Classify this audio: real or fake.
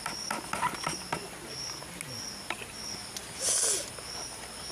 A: real